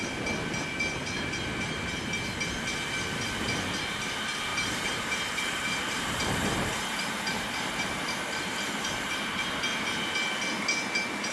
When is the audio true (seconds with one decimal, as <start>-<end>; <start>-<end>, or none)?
0.0-4.5; 9.6-11.3